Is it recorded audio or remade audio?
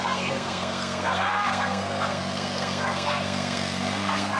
remade